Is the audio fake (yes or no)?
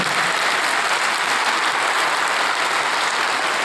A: no